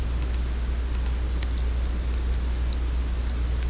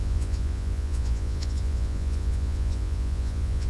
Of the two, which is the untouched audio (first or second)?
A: first